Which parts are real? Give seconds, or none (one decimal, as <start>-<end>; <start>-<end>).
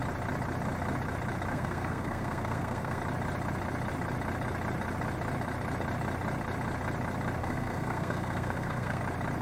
0.0-1.5; 3.0-7.4; 9.0-9.4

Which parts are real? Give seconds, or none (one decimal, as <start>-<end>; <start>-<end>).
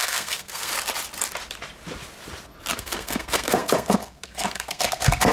0.7-2.7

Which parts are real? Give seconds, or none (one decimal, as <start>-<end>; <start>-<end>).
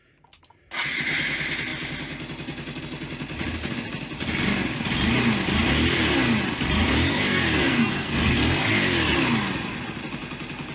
0.0-7.1; 8.7-10.7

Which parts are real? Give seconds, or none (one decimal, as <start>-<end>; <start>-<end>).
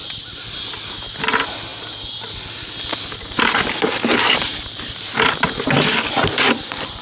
0.0-7.0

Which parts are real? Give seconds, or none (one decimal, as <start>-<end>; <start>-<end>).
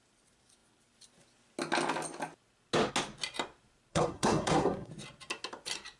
0.0-3.9; 4.9-6.0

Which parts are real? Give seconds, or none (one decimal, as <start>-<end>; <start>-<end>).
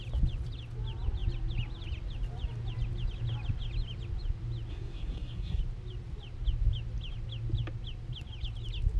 0.0-4.7; 5.6-9.0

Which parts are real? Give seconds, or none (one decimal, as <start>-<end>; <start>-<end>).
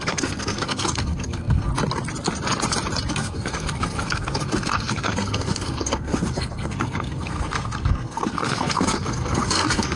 1.7-3.1